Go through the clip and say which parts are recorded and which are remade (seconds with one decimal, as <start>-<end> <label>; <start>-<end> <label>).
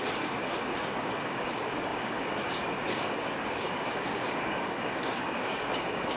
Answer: 0.0-6.2 remade